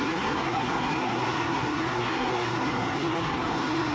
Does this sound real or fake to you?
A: fake